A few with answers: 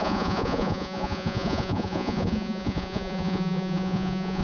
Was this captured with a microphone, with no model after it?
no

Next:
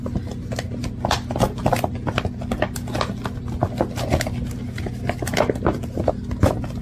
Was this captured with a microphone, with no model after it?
yes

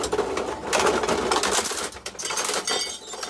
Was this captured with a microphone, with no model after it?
yes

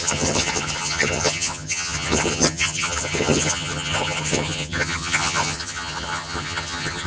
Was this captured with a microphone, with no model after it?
no